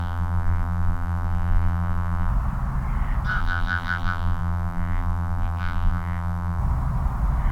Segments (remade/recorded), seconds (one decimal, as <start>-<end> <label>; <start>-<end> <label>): 0.0-2.3 remade; 2.3-3.4 recorded; 3.4-6.6 remade; 6.6-7.5 recorded